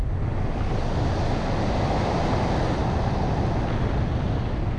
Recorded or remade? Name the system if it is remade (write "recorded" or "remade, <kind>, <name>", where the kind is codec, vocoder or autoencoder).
recorded